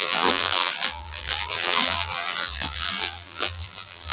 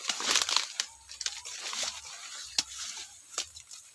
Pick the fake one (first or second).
first